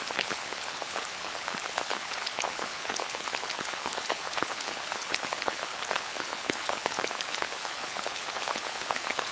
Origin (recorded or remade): remade